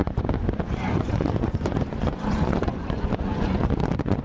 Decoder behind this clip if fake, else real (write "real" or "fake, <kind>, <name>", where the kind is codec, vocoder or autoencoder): fake, vocoder, Vocos